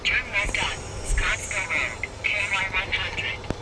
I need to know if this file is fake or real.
real